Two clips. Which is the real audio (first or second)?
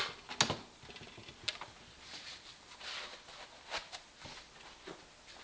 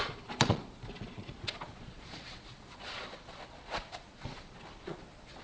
first